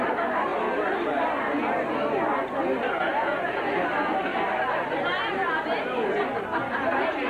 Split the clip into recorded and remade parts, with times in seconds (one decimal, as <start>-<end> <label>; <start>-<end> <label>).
0.0-3.1 recorded; 3.1-3.6 remade; 3.6-7.3 recorded